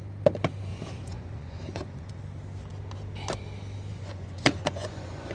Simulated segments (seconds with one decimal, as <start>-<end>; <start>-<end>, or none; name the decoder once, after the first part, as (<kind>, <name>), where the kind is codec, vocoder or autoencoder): 0.7-2.2 (vocoder, Vocos); 3.9-5.3